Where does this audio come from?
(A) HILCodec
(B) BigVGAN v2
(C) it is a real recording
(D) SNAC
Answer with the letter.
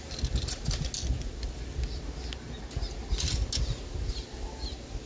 C